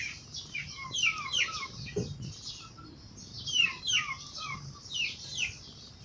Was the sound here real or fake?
fake